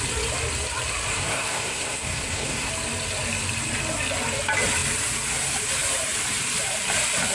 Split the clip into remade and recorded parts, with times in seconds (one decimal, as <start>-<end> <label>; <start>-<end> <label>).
0.0-1.1 recorded; 1.1-2.7 remade; 2.7-7.3 recorded